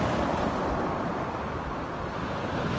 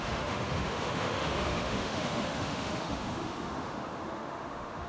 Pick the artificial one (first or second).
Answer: second